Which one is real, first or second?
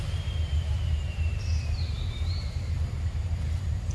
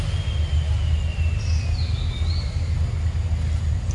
second